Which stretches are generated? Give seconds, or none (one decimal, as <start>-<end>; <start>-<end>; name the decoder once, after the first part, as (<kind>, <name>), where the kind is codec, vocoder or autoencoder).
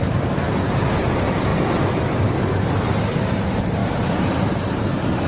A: 3.8-4.5 (vocoder, BigVGAN v2)